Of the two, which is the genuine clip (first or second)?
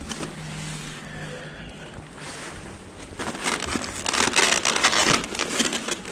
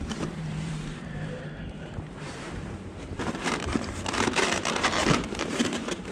first